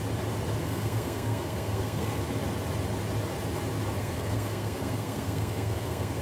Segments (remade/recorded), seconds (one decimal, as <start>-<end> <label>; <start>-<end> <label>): 0.0-0.6 recorded; 0.6-2.2 remade; 2.2-4.0 recorded; 4.0-6.2 remade